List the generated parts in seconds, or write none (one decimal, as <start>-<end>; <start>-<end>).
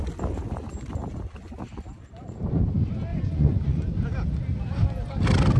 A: 3.1-3.9